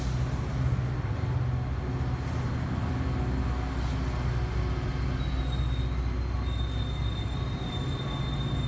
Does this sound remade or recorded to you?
recorded